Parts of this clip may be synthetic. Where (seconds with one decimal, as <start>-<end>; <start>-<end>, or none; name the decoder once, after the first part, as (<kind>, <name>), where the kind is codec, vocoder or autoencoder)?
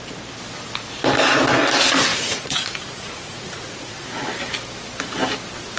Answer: 2.1-3.9 (vocoder, Vocos)